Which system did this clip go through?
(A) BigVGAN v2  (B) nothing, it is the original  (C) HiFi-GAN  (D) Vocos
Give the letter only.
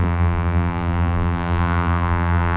A